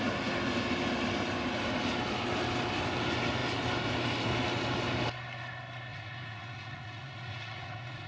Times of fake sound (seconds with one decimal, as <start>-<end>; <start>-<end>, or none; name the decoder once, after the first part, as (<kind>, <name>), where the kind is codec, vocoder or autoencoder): 5.9-8.1 (vocoder, Vocos)